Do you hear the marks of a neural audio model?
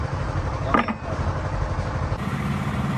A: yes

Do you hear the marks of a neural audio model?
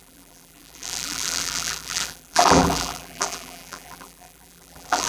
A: yes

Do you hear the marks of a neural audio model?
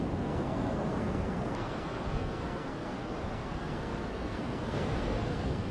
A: yes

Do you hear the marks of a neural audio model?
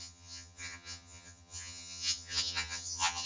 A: yes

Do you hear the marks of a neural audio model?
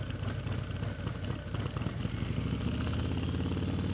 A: no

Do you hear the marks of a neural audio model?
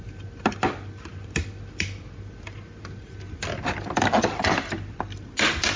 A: no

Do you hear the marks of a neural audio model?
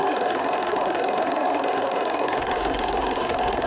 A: yes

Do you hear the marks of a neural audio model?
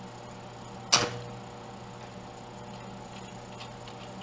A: no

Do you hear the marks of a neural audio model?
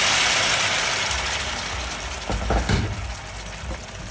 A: no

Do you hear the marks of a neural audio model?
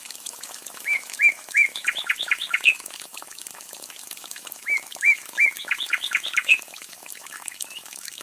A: yes